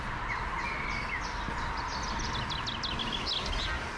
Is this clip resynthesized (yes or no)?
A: no